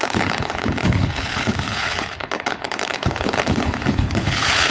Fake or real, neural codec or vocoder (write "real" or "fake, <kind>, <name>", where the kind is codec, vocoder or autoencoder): fake, codec, HILCodec